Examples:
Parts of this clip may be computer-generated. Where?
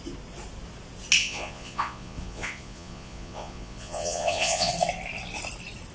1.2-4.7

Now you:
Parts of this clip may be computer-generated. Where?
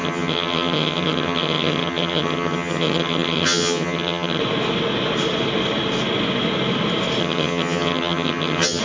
0.0-4.4; 7.2-8.8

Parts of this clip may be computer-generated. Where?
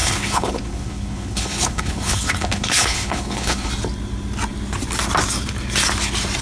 0.0-3.7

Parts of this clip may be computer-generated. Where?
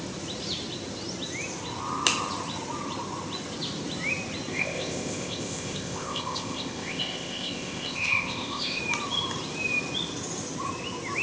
4.5-8.8